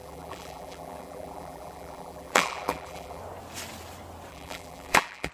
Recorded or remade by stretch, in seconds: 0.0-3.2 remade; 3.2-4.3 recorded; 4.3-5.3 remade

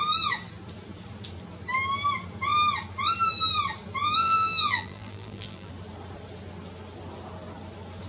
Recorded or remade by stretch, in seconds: 0.0-4.0 recorded; 4.0-5.7 remade; 5.7-8.1 recorded